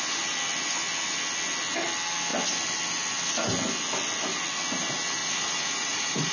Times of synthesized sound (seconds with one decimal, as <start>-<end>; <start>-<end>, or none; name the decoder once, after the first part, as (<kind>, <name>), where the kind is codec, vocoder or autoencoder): 5.2-6.3 (vocoder, Vocos)